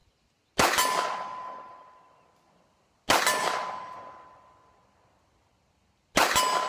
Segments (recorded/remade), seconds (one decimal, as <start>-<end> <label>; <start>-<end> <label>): 0.0-6.7 recorded